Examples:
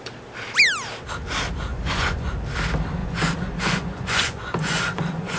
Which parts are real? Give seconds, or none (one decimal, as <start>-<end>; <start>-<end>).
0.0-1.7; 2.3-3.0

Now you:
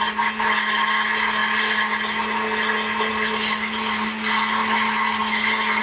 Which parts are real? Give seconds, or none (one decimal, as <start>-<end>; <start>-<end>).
0.0-5.8

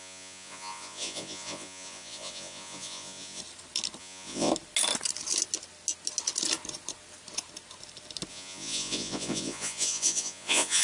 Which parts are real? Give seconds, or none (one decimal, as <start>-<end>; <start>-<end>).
3.4-4.0; 4.5-8.3

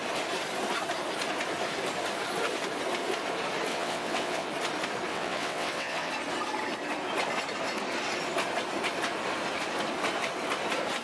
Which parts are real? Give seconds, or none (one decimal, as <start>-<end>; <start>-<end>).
0.0-3.7; 4.5-5.1; 6.1-11.0

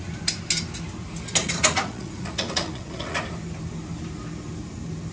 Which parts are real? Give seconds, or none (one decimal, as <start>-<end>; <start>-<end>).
0.0-1.4; 3.2-5.1

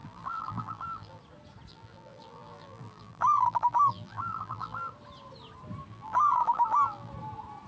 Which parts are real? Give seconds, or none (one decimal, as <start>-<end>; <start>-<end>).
1.2-1.7; 4.9-5.9; 7.1-7.7